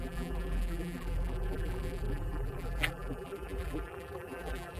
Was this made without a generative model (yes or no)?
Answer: no